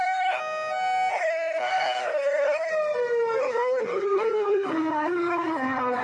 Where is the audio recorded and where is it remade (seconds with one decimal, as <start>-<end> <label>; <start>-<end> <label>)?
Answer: 0.0-0.4 remade; 0.4-1.1 recorded; 1.1-2.7 remade; 2.7-3.4 recorded; 3.4-6.0 remade